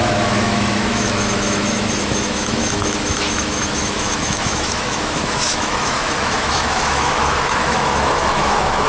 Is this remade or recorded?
remade